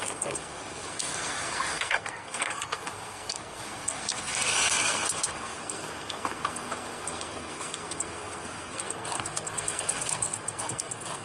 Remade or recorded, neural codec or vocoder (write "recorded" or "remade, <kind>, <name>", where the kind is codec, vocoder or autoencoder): remade, codec, SNAC